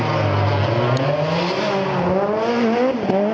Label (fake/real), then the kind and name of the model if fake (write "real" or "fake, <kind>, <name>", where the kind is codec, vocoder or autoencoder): real